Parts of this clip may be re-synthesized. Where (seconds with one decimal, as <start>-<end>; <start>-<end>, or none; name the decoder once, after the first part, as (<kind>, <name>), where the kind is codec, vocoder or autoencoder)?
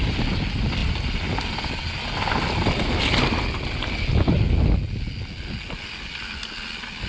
none